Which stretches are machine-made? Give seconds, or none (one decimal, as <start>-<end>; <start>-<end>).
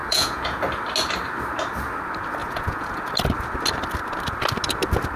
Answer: 0.0-0.6; 2.4-3.1